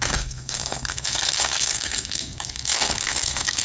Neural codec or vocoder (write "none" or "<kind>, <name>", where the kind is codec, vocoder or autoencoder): codec, SNAC